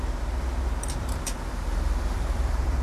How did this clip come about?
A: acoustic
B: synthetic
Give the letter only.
B